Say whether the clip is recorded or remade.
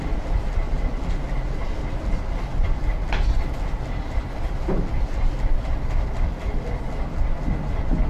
recorded